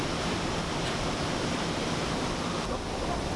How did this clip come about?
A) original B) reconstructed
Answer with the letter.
A